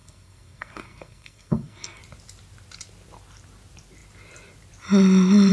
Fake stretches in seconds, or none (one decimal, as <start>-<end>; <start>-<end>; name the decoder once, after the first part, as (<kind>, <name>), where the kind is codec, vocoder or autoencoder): 0.0-2.0 (codec, SNAC)